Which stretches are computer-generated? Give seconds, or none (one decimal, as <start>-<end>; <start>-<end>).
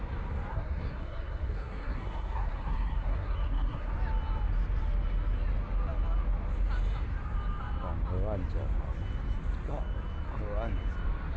0.5-3.9